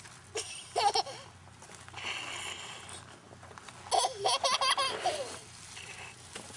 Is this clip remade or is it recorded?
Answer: recorded